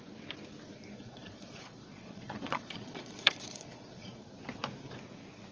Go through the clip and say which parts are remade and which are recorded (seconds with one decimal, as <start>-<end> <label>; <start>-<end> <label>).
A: 0.0-0.9 recorded; 0.9-4.2 remade; 4.2-5.5 recorded

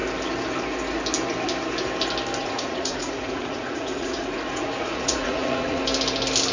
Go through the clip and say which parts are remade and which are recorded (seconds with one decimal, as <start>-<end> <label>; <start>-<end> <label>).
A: 0.0-2.4 recorded; 2.4-5.8 remade; 5.8-6.5 recorded

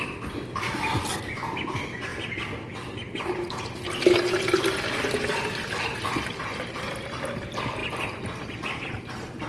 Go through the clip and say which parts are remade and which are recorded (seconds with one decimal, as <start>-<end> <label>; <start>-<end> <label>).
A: 0.0-9.5 recorded

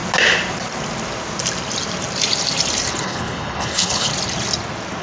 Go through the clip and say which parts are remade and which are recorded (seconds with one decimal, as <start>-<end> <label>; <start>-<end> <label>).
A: 0.0-3.0 recorded; 3.0-4.1 remade; 4.1-5.0 recorded

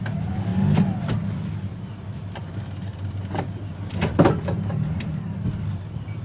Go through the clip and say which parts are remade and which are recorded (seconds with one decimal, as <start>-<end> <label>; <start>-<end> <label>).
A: 0.0-2.4 recorded; 2.4-3.1 remade; 3.1-4.1 recorded; 4.1-5.0 remade; 5.0-6.2 recorded

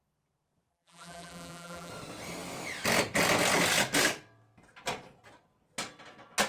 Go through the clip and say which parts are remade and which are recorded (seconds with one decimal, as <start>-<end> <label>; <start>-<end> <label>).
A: 0.0-0.7 recorded; 0.7-1.9 remade; 1.9-6.5 recorded

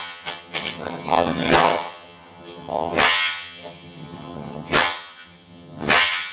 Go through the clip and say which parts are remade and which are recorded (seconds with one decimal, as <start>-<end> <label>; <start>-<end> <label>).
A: 0.0-6.3 remade

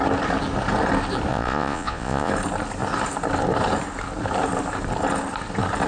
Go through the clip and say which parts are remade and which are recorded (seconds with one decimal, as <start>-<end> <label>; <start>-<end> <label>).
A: 0.0-1.3 recorded; 1.3-2.3 remade; 2.3-5.9 recorded